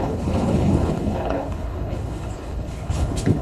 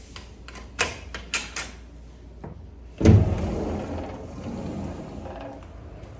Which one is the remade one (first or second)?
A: first